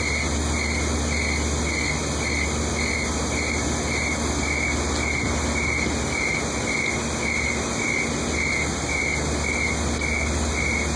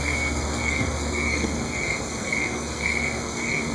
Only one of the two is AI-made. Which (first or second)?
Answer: second